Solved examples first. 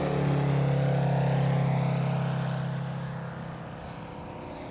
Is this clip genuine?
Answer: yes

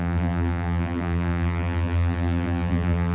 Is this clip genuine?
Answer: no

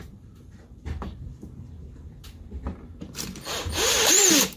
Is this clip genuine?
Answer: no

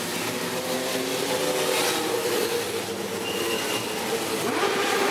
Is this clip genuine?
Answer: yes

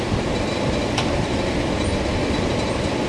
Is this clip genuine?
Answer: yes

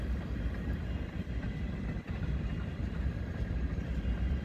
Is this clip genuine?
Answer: yes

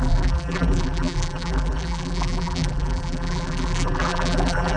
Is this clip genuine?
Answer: no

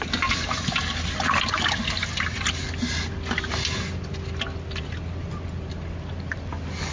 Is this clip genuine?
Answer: yes